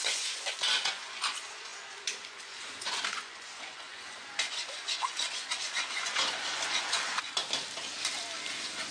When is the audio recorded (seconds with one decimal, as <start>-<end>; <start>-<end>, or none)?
7.4-8.5